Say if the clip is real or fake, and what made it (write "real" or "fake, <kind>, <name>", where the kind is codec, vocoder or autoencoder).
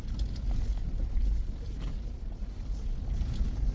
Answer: real